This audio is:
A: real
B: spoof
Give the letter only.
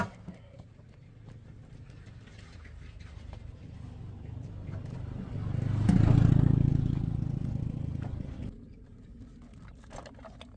A